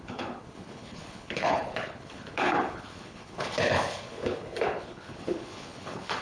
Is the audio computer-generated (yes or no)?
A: yes